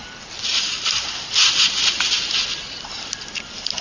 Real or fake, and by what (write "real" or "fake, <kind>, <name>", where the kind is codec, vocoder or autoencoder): real